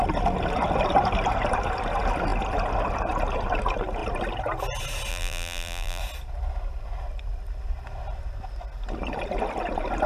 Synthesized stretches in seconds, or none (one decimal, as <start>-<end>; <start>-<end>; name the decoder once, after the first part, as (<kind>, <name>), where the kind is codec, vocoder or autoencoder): 5.1-6.0 (vocoder, BigVGAN v2)